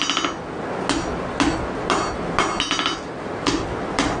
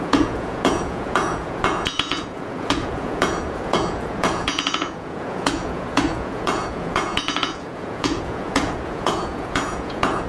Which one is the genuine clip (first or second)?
first